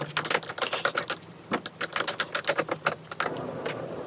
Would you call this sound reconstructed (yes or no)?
no